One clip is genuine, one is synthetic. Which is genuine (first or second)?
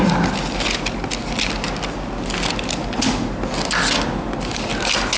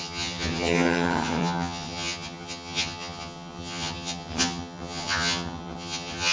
first